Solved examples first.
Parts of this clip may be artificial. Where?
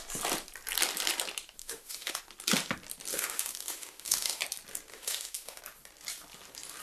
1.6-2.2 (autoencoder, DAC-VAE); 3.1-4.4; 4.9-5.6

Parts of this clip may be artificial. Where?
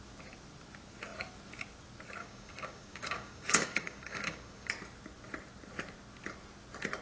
2.2-4.7 (codec, DAC)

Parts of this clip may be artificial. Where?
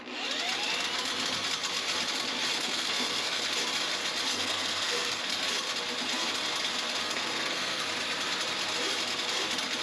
2.5-3.4 (codec, SNAC); 4.3-5.2; 7.0-7.8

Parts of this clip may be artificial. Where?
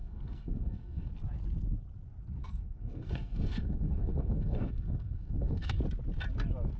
0.0-1.1 (codec, SNAC); 2.4-5.8